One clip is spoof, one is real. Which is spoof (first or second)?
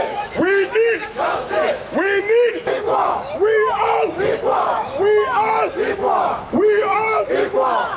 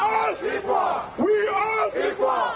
first